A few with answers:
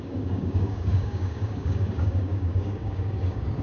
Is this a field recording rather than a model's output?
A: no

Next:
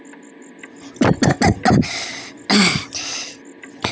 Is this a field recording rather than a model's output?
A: yes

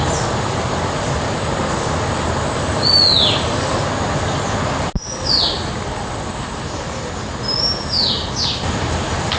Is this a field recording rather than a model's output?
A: yes